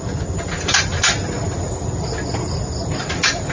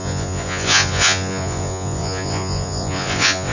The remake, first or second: second